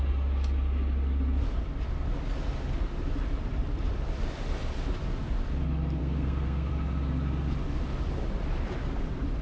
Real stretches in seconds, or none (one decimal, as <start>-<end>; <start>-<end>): 0.0-6.0; 6.7-9.4